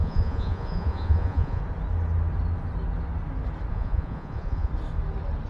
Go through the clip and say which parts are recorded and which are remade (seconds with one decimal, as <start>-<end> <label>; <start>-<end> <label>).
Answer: 0.0-1.6 remade; 1.6-3.7 recorded; 3.7-4.7 remade; 4.7-5.5 recorded